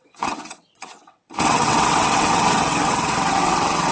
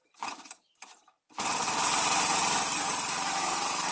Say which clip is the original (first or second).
second